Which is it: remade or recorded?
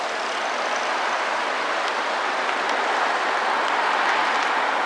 recorded